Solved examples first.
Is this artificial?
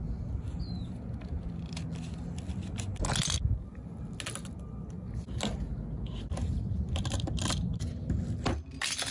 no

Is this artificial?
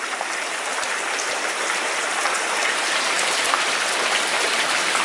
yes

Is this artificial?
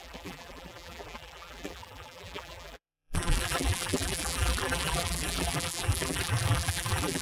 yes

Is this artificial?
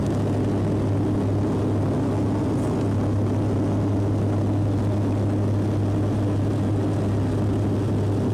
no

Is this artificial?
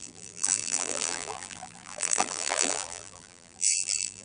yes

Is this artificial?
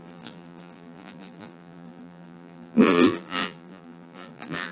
yes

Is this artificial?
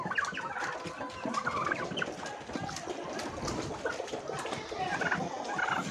no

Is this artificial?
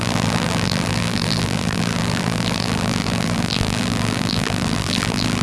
yes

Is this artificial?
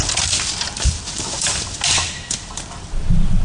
no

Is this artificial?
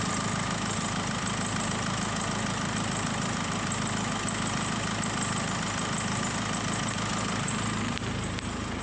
yes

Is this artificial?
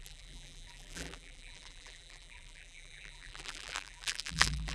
yes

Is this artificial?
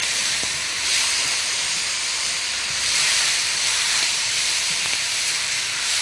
yes